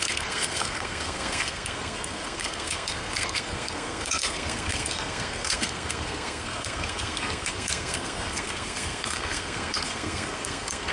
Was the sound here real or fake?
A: fake